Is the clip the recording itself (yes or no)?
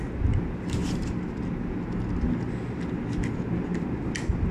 yes